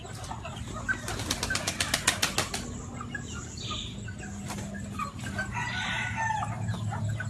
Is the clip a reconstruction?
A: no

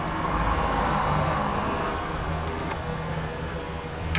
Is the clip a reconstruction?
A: yes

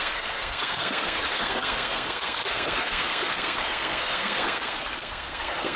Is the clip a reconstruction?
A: yes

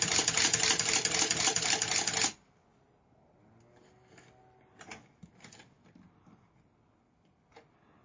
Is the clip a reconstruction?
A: no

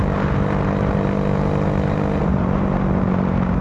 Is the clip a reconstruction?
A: no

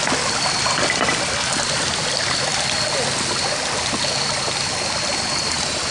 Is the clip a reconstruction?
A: no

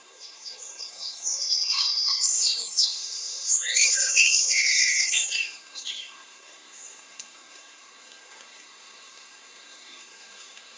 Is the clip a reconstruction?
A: yes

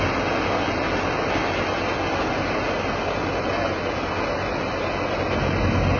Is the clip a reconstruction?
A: no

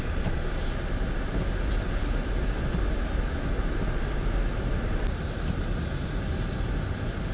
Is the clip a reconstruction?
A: no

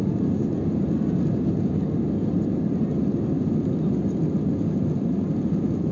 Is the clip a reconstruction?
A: no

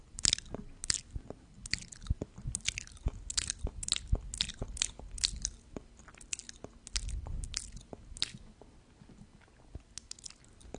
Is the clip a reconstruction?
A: no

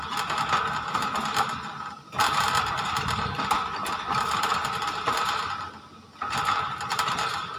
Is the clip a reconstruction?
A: no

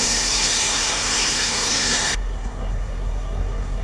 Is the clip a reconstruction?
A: yes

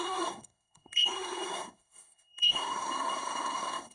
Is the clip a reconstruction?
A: yes